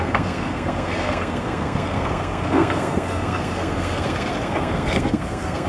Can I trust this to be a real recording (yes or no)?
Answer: no